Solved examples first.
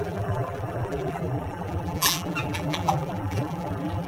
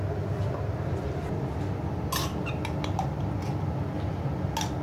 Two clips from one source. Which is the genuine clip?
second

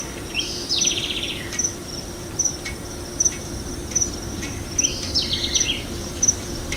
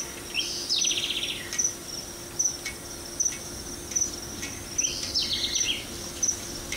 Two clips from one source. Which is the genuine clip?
second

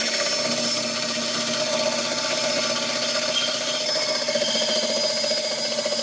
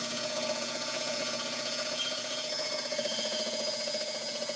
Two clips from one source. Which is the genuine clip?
first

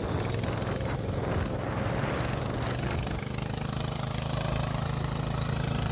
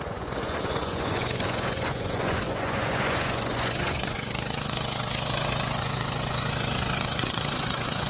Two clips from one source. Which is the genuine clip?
first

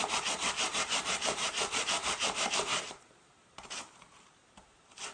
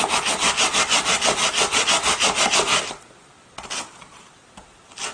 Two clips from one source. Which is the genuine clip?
second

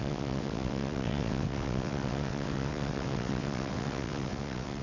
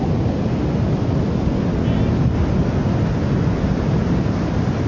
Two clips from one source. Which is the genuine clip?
second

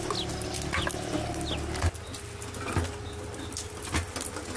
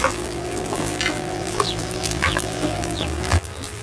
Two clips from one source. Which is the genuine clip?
first